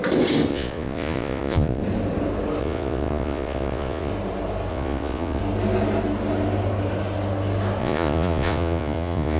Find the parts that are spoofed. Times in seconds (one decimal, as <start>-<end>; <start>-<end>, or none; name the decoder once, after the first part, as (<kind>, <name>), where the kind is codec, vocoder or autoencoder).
0.5-1.8 (vocoder, Vocos); 2.6-4.1; 4.7-5.4; 7.8-9.4